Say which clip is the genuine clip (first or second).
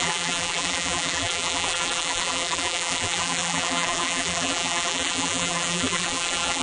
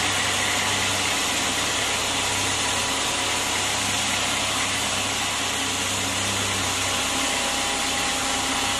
second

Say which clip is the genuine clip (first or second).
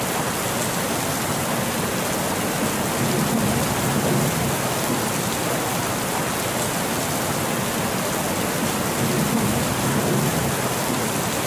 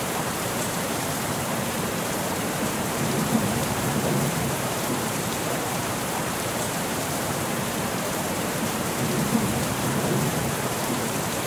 first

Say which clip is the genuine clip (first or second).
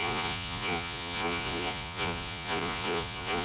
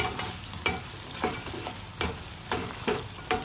second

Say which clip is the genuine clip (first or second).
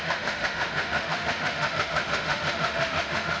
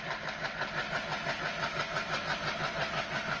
second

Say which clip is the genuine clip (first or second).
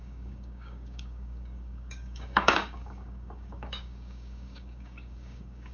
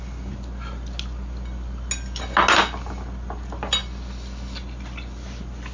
second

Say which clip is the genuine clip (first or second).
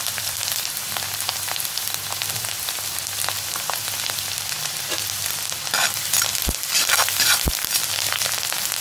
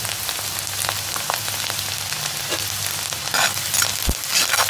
second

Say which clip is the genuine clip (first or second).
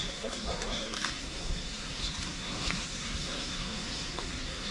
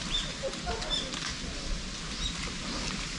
second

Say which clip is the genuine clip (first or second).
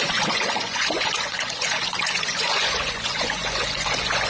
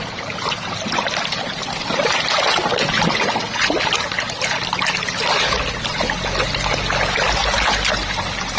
second